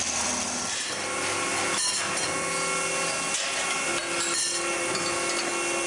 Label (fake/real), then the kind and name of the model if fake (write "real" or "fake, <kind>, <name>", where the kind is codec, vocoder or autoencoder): real